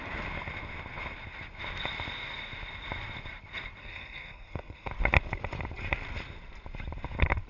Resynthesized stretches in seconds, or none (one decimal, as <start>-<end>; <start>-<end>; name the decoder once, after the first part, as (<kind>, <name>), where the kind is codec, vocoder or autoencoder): 3.8-4.9 (codec, SNAC)